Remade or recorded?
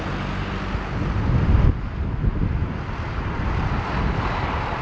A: recorded